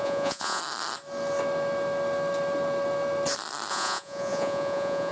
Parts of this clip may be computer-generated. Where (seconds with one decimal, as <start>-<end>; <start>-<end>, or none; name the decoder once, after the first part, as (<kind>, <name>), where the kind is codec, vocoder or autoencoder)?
0.0-0.6 (vocoder, Vocos); 3.7-5.1